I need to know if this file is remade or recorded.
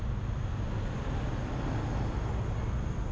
recorded